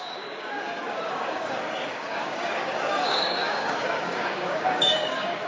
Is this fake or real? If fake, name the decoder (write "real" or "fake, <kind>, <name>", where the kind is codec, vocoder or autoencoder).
fake, codec, DAC